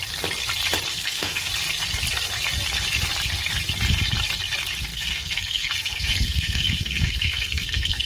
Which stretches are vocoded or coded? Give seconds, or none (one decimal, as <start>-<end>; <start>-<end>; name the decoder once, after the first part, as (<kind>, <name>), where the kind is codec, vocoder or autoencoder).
0.9-1.5 (codec, SNAC); 4.9-8.1